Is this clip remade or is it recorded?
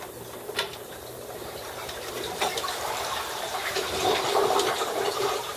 remade